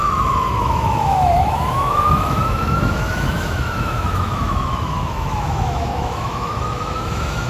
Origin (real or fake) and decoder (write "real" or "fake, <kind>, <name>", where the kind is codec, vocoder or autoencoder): fake, autoencoder, DAC-VAE